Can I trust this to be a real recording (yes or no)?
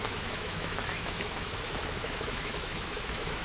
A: no